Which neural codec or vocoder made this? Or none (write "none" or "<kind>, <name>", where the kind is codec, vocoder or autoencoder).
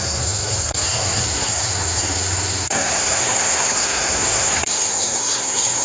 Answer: codec, SNAC